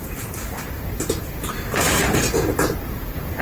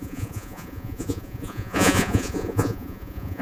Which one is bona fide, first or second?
first